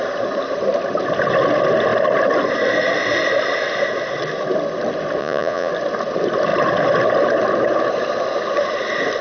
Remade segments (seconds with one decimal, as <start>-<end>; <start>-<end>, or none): 5.2-5.7